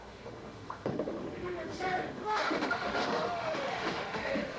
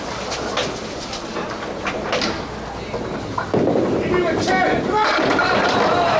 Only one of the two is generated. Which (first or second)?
first